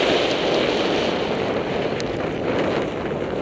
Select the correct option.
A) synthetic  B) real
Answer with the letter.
B